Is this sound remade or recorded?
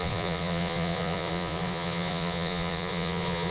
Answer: remade